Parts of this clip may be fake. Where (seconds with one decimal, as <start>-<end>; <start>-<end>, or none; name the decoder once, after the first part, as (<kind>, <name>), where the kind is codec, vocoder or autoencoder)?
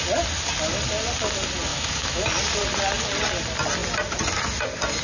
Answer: 1.7-2.3 (autoencoder, DAC-VAE)